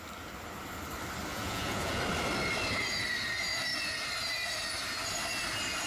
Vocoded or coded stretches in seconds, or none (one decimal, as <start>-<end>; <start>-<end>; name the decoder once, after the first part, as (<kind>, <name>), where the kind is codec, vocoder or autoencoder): 1.3-2.0 (vocoder, Vocos)